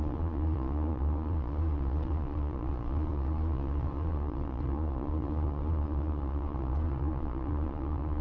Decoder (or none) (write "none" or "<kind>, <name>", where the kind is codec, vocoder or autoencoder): vocoder, Vocos